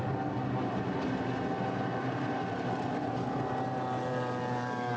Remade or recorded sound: recorded